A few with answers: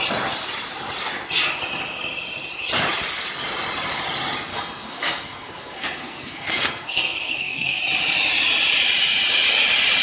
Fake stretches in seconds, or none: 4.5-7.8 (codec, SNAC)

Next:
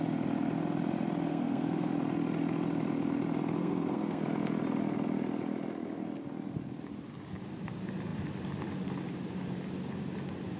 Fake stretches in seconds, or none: 1.3-1.9 (codec, SNAC); 3.6-4.2

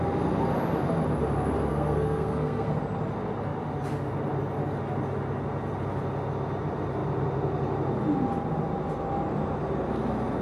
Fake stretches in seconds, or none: 1.7-2.8 (codec, SNAC)

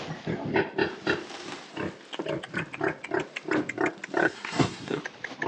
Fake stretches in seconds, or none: 4.2-5.0 (codec, SNAC)

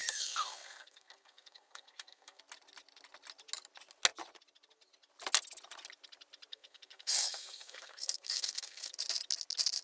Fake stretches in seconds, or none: 0.0-2.4 (codec, SNAC); 6.5-8.9

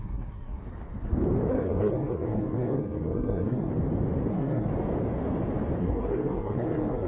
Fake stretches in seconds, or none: 0.0-0.6 (codec, SNAC); 1.5-3.7; 4.3-4.7; 5.8-7.1

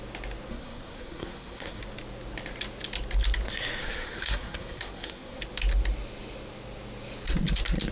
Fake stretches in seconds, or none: 0.5-1.8 (codec, SNAC); 3.8-5.4

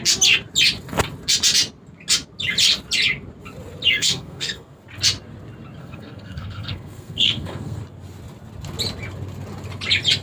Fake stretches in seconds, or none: 3.9-4.8 (codec, SNAC); 5.8-7.8